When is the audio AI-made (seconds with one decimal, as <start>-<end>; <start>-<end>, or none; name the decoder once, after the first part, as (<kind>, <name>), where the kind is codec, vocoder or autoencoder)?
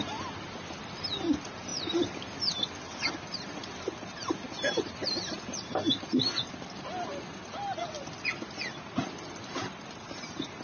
none